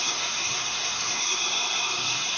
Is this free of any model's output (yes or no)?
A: no